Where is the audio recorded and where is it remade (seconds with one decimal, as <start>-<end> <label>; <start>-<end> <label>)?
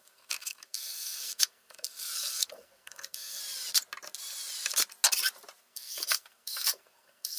0.0-3.4 remade; 3.4-5.6 recorded; 5.6-7.4 remade